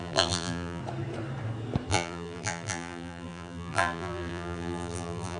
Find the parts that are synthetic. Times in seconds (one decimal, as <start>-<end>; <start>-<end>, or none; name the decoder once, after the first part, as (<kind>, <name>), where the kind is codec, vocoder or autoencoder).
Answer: 0.0-0.8 (vocoder, BigVGAN v2); 1.9-5.4